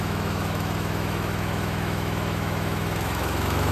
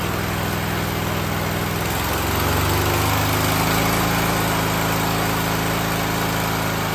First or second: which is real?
second